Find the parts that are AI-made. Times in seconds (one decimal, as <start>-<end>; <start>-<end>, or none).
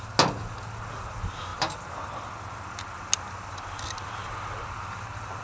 none